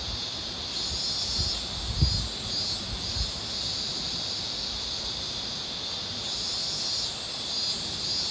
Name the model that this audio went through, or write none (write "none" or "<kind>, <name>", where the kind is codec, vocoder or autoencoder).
none